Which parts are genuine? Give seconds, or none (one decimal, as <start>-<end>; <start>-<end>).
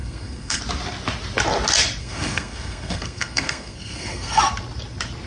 0.6-2.0; 4.4-5.3